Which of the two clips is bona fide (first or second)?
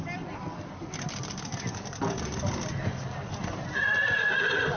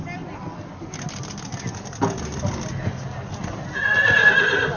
second